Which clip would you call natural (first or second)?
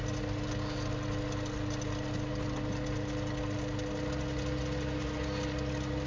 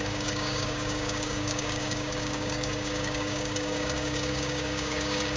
first